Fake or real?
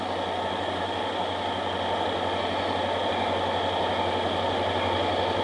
real